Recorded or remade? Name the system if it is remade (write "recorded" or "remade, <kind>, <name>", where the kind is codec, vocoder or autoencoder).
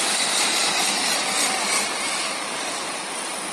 remade, vocoder, BigVGAN v2